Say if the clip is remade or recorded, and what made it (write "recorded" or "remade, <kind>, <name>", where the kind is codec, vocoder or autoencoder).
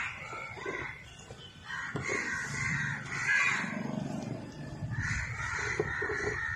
remade, vocoder, BigVGAN v2